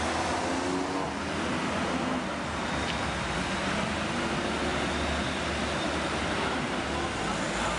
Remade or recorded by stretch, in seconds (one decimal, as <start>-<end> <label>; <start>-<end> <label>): 0.0-7.8 recorded